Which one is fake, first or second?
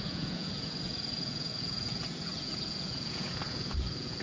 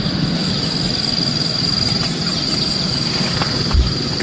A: first